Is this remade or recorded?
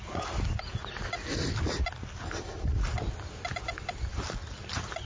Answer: recorded